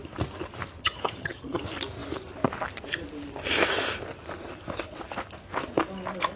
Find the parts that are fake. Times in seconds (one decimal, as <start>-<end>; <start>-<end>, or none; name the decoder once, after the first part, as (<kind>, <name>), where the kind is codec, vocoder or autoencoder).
0.8-1.6 (vocoder, HiFi-GAN)